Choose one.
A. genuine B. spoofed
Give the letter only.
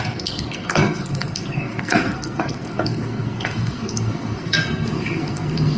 B